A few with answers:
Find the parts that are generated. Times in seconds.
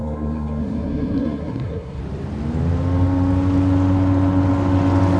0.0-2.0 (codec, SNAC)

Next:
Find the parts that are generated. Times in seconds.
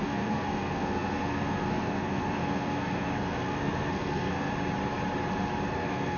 0.0-4.5 (codec, SNAC); 5.7-6.2